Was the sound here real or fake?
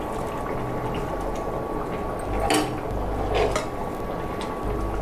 real